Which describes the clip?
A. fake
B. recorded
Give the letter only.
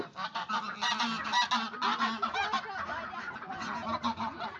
B